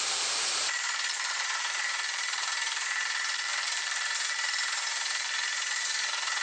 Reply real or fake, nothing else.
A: fake